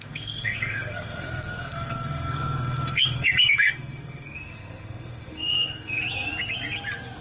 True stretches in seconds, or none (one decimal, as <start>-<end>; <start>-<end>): 6.0-7.2